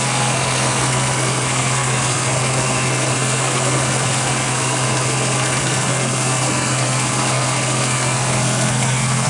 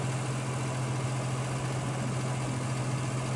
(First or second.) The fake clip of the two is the first